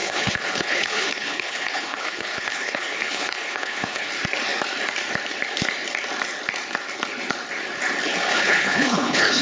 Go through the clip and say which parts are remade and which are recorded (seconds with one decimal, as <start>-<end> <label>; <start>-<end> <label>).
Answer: 0.0-4.1 remade; 4.1-8.3 recorded; 8.3-9.4 remade